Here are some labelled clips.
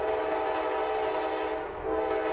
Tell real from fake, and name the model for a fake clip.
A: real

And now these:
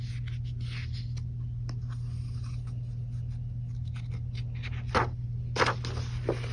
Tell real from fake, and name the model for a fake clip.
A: real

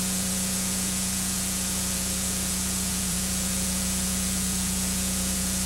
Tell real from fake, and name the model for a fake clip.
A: fake, vocoder, Vocos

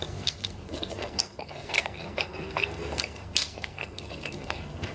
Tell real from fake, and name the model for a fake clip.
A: fake, codec, SNAC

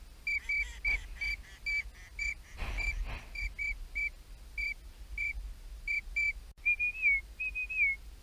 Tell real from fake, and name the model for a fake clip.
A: real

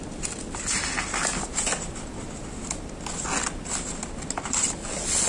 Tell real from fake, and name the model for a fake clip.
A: real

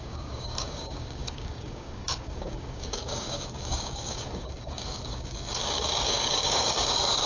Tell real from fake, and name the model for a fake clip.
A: fake, codec, DAC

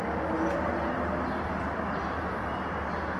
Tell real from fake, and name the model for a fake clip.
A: real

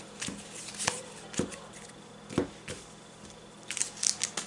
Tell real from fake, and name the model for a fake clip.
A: real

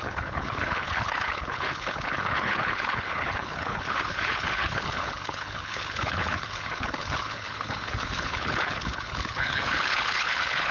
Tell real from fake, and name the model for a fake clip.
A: fake, codec, HILCodec